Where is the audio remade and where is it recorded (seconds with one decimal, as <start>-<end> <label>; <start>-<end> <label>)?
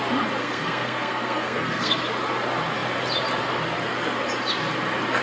0.0-0.4 recorded; 0.4-2.0 remade; 2.0-5.2 recorded